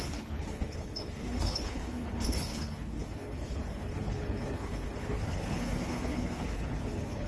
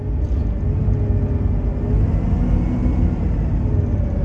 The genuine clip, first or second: second